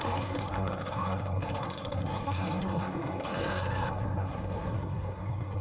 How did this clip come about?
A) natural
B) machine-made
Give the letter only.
B